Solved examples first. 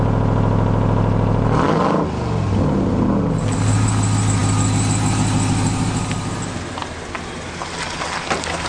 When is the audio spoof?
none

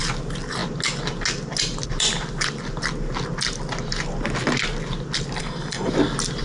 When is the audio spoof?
5.4-5.9 (codec, SNAC)

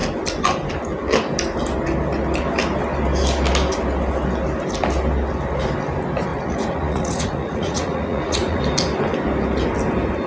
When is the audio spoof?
6.3-8.6 (vocoder, Vocos)

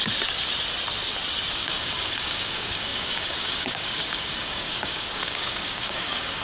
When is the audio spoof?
1.5-6.4 (codec, DAC)

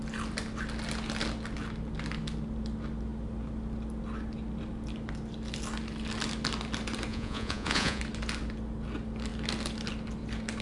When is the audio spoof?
7.1-8.0 (vocoder, Vocos)